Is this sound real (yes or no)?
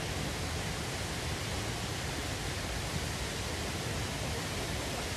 yes